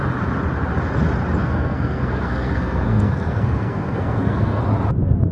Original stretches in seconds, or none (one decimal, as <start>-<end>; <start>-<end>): 0.0-1.4; 4.6-5.3